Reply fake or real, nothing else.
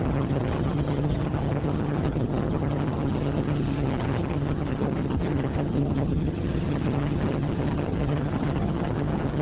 fake